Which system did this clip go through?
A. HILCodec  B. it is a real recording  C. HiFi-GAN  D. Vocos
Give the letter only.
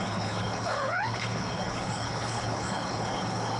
A